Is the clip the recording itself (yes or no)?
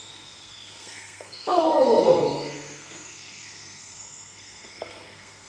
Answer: no